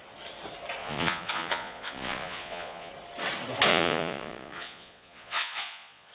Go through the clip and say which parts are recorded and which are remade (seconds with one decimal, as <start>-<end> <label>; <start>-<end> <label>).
0.0-0.8 recorded; 0.8-2.9 remade; 2.9-3.7 recorded; 3.7-6.1 remade